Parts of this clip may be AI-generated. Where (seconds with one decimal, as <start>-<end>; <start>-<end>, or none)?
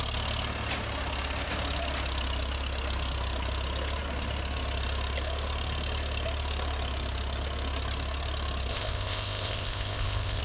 8.7-10.4